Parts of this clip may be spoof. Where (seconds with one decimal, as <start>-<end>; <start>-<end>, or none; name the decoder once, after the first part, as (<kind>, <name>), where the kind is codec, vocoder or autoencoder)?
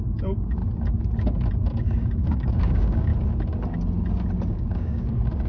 0.0-0.6 (codec, DAC); 1.8-3.1; 4.5-5.5